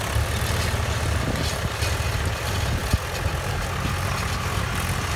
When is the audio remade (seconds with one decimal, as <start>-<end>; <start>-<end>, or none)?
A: none